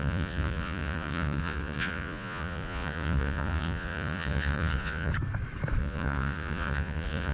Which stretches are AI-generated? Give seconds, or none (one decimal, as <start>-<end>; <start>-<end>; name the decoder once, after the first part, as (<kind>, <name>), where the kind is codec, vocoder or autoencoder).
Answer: 0.0-5.1 (vocoder, Vocos); 5.8-7.3